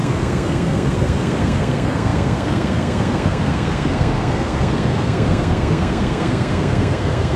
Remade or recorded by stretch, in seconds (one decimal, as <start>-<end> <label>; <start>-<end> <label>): 0.0-7.4 remade